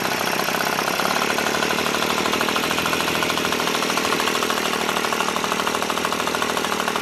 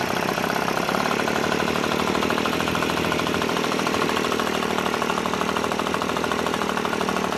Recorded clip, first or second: first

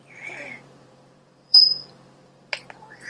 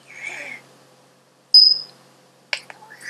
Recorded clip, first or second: second